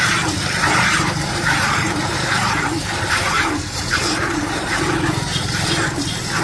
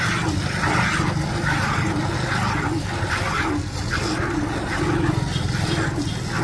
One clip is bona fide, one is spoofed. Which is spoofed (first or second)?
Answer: first